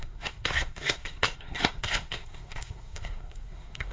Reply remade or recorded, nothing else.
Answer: remade